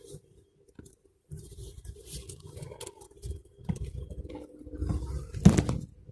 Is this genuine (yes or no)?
yes